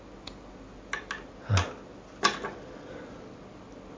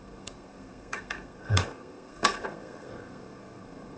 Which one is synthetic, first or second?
second